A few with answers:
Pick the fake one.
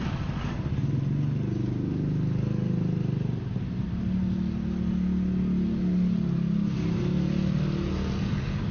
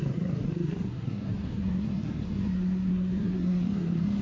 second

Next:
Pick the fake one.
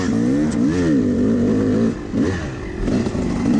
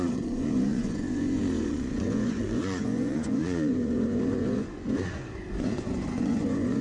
second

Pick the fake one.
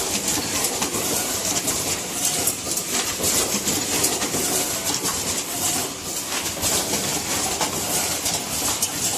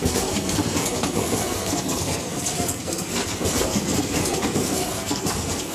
second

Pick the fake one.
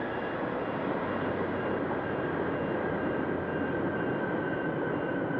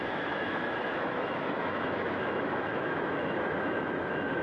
second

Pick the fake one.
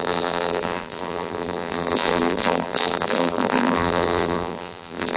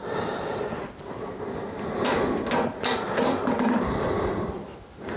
first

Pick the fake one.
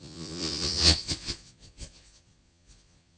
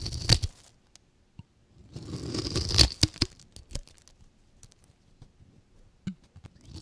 first